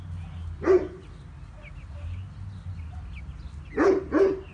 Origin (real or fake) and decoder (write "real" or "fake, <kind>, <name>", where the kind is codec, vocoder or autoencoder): real